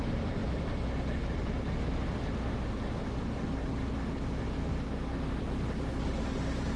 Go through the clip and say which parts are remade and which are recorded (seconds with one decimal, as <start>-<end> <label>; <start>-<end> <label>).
0.0-6.8 recorded